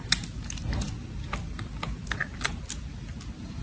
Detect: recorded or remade recorded